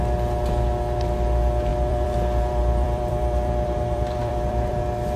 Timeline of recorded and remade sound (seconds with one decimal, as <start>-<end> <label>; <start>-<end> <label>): 0.0-1.7 recorded; 1.7-4.8 remade; 4.8-5.2 recorded